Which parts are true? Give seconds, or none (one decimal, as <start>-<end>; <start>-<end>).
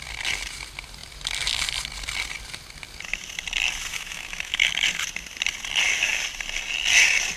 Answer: 0.0-3.9; 4.7-7.4